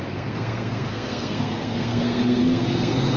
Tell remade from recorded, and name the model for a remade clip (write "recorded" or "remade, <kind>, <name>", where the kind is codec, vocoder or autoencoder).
remade, codec, SNAC